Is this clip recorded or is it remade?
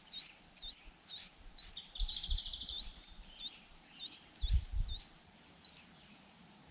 remade